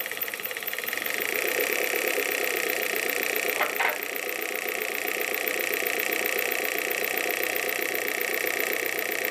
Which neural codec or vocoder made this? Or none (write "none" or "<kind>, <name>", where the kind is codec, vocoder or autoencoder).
vocoder, BigVGAN v2